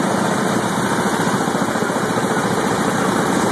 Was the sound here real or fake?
real